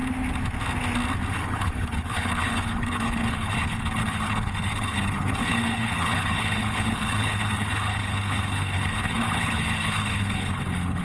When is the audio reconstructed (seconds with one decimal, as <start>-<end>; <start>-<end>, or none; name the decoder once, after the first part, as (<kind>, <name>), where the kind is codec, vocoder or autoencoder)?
1.3-11.0 (codec, HILCodec)